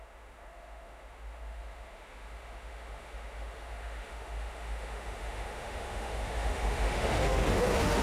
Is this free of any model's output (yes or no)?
no